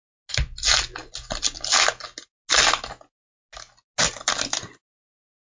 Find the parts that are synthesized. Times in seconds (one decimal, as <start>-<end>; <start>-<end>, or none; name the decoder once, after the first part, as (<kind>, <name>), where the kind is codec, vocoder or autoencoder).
none